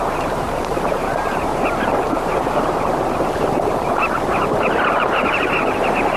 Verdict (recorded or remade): remade